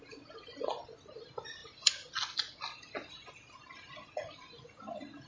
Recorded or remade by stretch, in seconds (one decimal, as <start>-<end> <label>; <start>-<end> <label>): 0.0-1.6 recorded; 1.6-3.3 remade; 3.3-4.4 recorded; 4.4-5.3 remade